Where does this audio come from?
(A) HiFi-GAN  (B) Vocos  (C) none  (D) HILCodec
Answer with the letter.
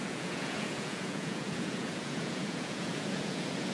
B